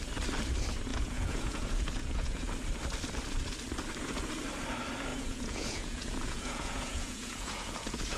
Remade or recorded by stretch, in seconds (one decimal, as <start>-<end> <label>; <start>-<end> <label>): 0.0-0.9 recorded; 0.9-2.5 remade; 2.5-5.1 recorded; 5.1-8.2 remade